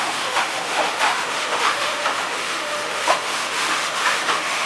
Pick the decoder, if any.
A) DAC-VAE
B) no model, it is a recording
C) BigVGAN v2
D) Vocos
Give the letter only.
A